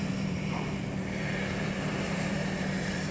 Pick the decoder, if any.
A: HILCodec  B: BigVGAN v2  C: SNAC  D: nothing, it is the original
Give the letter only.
B